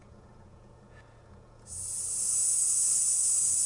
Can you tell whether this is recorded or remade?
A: remade